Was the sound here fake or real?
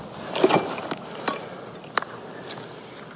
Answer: real